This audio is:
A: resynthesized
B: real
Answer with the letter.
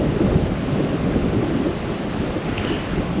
B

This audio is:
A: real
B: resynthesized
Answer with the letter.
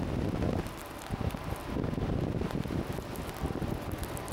A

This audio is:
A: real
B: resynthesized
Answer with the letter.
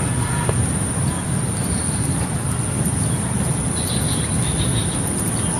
A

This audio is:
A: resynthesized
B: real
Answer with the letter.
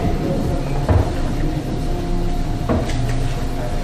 B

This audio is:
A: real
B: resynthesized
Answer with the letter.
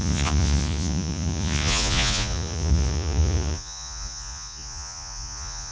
B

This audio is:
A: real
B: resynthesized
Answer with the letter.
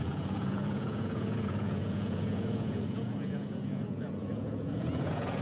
B